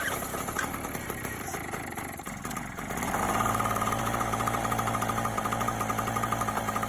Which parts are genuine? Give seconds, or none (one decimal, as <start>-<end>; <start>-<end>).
0.0-6.9